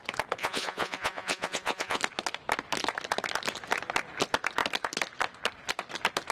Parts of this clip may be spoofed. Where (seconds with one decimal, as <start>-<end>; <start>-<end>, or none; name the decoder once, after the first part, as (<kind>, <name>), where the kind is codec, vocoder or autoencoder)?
0.4-2.0 (vocoder, Vocos)